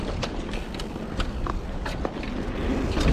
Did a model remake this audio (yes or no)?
no